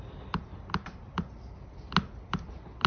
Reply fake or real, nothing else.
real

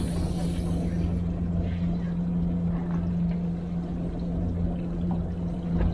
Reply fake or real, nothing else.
real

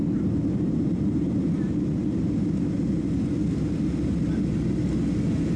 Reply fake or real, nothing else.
real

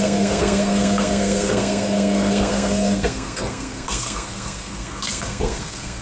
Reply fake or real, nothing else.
fake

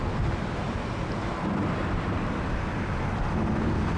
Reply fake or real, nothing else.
real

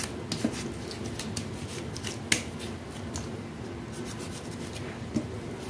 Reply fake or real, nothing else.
real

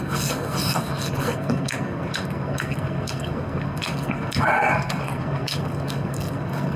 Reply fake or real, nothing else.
fake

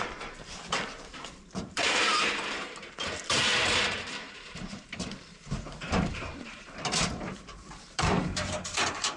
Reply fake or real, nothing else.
fake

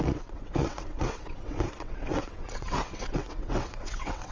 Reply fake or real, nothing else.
fake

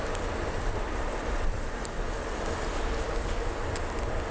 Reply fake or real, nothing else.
real